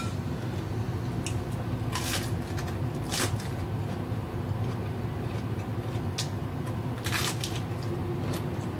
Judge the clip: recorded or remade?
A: recorded